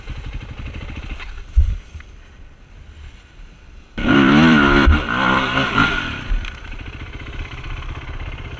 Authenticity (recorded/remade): remade